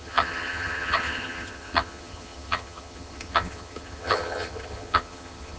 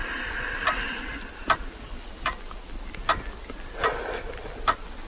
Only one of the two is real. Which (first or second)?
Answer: second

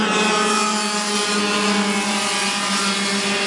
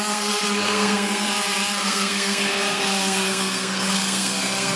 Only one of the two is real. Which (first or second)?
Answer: first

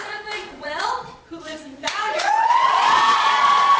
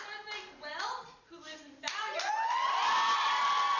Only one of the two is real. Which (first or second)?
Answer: second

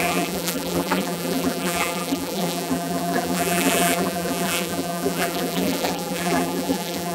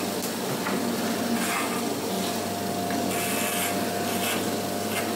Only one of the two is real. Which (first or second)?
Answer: second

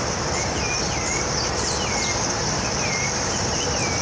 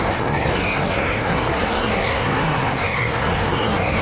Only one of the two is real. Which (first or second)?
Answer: first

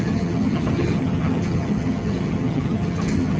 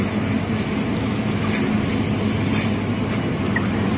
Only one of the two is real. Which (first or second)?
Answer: second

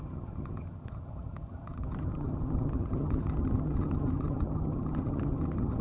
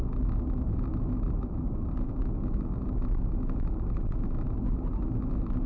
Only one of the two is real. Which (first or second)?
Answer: second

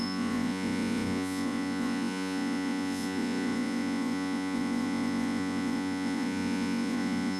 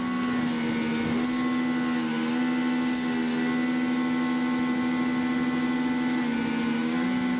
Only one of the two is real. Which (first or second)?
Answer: second